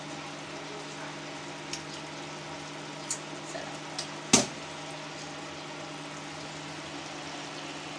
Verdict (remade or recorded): recorded